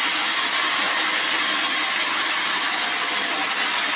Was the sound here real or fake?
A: real